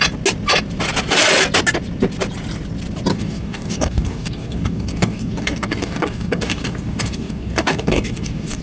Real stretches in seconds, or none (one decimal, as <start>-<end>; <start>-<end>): 0.0-3.1